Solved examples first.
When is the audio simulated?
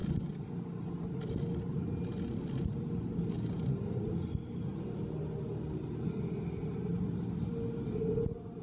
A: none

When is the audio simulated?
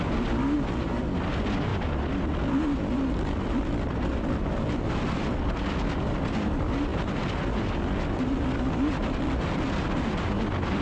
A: none